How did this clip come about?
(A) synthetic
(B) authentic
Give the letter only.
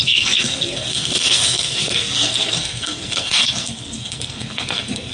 A